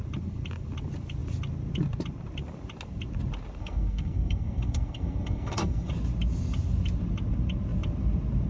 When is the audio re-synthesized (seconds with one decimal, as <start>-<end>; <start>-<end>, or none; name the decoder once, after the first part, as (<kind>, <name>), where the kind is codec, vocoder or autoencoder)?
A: 3.6-5.9 (codec, SNAC)